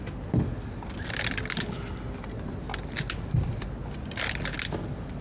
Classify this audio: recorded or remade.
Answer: recorded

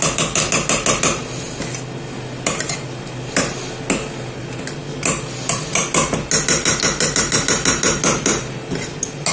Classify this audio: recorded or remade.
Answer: recorded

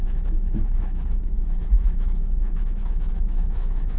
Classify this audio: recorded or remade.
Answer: remade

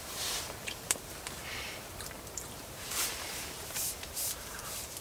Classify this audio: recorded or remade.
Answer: remade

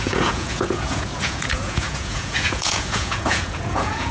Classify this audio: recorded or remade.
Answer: remade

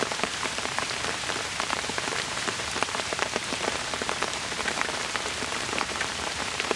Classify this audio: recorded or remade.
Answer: remade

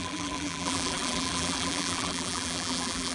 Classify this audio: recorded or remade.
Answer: remade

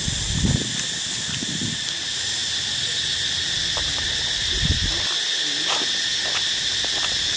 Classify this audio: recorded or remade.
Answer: recorded